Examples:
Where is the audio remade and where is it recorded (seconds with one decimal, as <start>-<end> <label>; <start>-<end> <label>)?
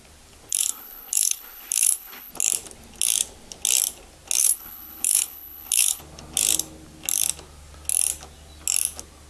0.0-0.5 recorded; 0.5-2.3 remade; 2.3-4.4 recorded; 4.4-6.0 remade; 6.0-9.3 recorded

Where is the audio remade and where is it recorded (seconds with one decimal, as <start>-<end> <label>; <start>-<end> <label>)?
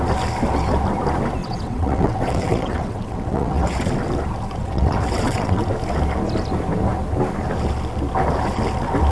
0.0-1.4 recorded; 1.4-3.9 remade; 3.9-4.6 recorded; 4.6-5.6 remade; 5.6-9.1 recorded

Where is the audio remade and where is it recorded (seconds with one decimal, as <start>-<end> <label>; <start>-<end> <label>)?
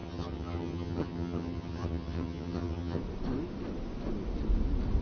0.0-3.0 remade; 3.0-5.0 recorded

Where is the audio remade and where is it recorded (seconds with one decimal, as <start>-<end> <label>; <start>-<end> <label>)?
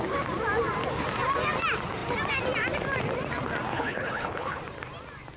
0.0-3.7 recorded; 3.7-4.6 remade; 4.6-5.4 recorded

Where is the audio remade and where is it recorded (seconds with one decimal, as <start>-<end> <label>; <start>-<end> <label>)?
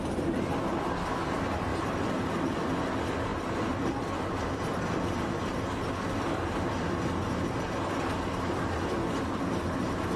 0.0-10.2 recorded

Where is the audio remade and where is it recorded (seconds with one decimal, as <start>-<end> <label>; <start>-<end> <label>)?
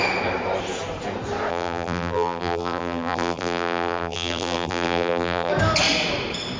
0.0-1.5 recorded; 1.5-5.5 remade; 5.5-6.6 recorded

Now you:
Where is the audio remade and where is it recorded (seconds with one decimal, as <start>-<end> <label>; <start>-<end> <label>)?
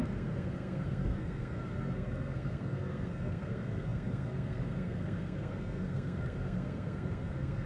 0.0-7.7 remade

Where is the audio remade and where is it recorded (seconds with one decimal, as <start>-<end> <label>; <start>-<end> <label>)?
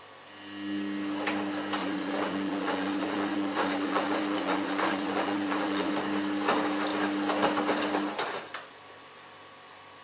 0.0-1.8 recorded; 1.8-5.9 remade; 5.9-10.0 recorded